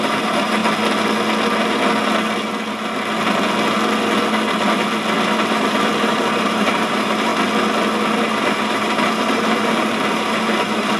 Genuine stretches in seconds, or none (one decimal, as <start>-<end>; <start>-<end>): 0.6-5.5; 7.3-8.3